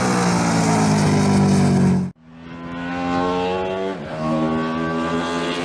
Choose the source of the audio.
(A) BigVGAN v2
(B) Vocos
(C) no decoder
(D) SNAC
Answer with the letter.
C